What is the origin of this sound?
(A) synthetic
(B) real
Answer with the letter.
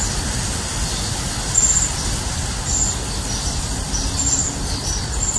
B